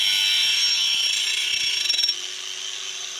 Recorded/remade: recorded